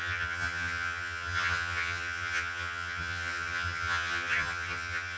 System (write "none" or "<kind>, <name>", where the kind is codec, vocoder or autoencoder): vocoder, HiFi-GAN